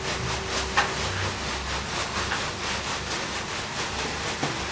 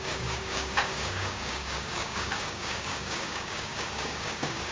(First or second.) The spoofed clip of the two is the second